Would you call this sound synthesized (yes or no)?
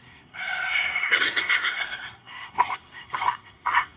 yes